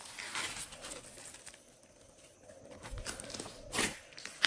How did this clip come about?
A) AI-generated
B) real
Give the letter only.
B